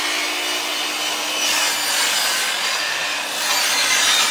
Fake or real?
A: real